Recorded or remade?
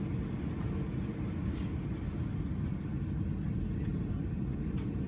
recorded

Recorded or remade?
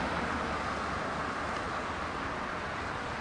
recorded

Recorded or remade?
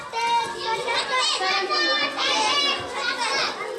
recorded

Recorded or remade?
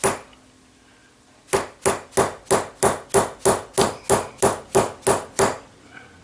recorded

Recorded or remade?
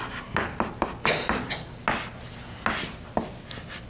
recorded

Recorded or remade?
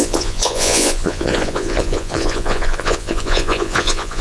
remade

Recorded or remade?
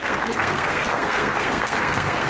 remade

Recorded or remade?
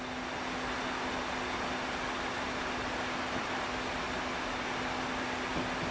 recorded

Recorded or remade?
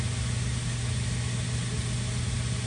recorded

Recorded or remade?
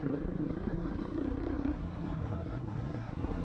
remade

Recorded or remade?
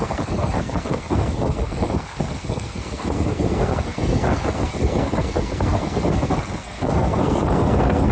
remade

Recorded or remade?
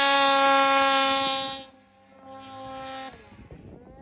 recorded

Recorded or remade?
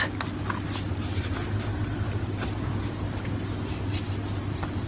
recorded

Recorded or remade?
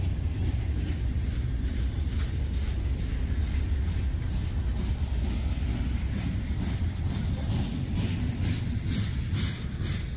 recorded